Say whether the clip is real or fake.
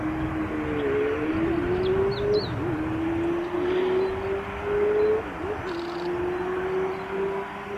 real